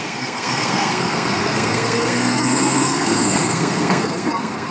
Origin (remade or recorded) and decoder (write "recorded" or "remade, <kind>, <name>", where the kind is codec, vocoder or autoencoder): remade, codec, SNAC